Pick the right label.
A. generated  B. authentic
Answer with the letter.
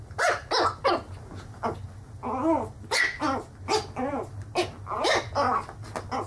B